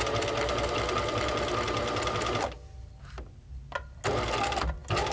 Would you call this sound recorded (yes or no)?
yes